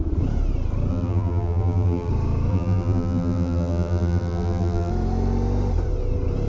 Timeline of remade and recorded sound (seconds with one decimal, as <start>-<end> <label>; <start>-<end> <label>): 0.0-0.9 recorded; 0.9-2.1 remade; 2.1-2.5 recorded; 2.5-4.9 remade; 4.9-6.5 recorded

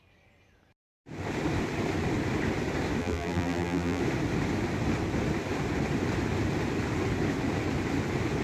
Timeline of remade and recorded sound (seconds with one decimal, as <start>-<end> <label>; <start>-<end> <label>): 0.0-3.0 recorded; 3.0-4.0 remade; 4.0-8.4 recorded

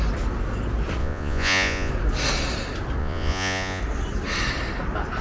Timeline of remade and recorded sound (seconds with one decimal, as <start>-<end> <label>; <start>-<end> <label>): 0.0-1.0 recorded; 1.0-1.9 remade; 1.9-3.0 recorded; 3.0-3.8 remade; 3.8-5.2 recorded

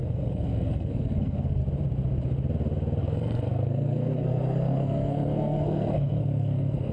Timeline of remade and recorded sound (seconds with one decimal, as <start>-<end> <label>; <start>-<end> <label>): 0.0-1.6 remade; 1.6-3.0 recorded; 3.0-6.9 remade

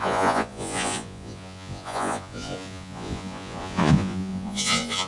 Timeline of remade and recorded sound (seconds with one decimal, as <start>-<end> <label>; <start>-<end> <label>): 0.0-5.1 remade